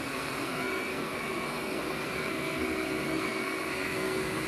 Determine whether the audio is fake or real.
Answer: fake